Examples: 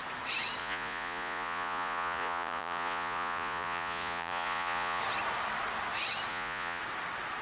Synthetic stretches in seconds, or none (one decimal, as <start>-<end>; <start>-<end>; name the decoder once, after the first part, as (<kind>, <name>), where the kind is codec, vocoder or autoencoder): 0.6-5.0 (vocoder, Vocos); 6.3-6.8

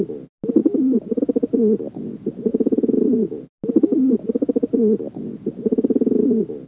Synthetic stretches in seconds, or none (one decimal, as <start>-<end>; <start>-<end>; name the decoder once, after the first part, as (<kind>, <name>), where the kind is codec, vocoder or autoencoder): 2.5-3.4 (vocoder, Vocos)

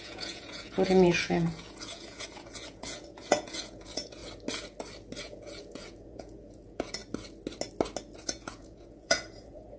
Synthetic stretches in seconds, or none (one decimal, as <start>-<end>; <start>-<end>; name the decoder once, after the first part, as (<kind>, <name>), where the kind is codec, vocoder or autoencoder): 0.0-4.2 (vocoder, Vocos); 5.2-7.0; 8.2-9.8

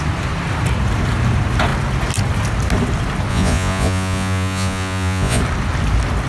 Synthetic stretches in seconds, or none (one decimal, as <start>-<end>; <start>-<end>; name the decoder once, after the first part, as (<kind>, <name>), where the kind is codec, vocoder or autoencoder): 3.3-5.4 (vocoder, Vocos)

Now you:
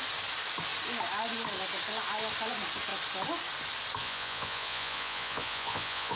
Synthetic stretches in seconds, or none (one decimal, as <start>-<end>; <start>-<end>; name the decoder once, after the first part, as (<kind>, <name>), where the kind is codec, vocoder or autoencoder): 4.0-6.2 (vocoder, Vocos)